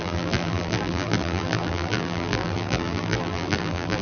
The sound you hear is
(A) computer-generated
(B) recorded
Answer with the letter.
A